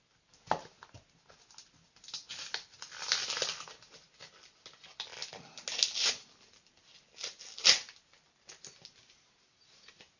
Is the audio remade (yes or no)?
no